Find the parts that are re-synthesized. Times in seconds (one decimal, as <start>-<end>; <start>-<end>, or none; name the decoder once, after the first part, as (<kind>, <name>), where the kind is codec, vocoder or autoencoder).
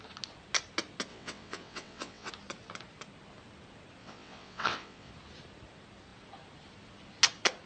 1.1-2.3 (vocoder, WaveNeXt); 4.0-5.1